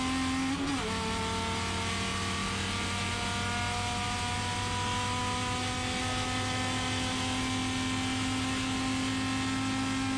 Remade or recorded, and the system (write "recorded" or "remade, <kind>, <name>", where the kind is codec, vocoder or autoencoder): recorded